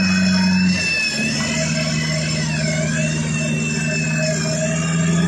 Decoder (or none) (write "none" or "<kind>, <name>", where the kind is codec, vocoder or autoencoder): none